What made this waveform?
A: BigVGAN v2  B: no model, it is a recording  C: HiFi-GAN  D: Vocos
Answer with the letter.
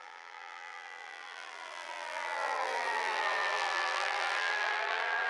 A